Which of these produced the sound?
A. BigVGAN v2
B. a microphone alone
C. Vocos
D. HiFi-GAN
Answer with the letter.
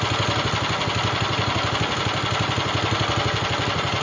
B